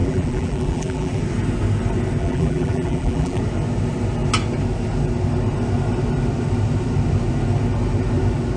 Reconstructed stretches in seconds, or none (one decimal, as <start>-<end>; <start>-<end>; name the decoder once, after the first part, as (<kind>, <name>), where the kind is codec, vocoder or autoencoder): 0.0-1.2 (vocoder, BigVGAN v2); 2.2-3.4